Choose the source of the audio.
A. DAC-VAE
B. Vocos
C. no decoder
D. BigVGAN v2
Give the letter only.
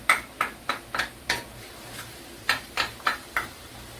D